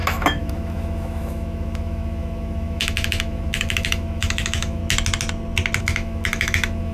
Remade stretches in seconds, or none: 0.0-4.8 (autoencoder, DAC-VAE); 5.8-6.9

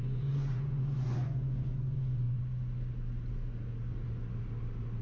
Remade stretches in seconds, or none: 0.0-2.4 (vocoder, Vocos)

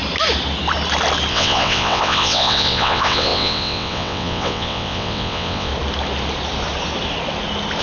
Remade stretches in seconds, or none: 1.3-5.7 (vocoder, WaveNeXt)

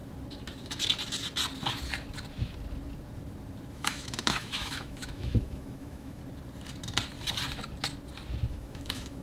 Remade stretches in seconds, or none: 3.7-6.2 (autoencoder, DAC-VAE); 8.5-9.2

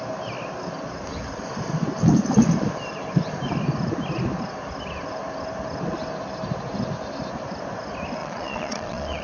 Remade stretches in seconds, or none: 8.2-9.2 (vocoder, Vocos)

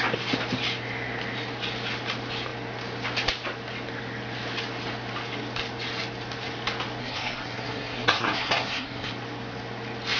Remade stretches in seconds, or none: 7.0-9.1 (codec, SNAC)

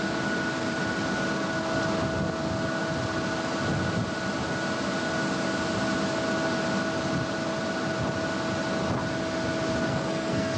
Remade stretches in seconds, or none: 9.9-10.6 (codec, SNAC)

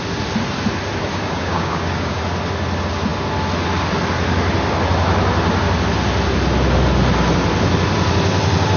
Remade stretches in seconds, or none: 1.1-2.2 (codec, DAC)